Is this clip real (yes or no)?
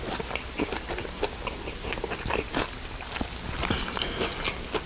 yes